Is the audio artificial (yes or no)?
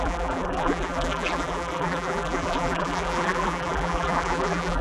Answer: yes